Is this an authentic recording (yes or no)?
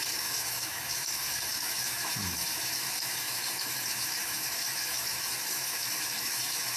no